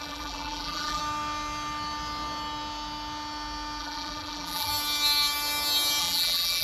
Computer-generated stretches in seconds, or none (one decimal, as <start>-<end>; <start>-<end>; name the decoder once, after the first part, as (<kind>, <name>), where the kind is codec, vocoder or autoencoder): 0.0-1.0 (vocoder, BigVGAN v2); 3.8-4.7; 6.0-6.6